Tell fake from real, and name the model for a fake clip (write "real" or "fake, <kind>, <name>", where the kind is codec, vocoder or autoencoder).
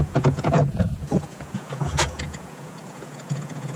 fake, vocoder, Vocos